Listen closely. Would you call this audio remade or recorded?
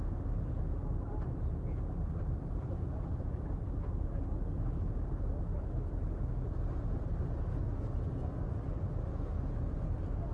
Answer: recorded